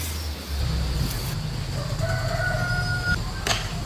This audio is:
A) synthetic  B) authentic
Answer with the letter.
B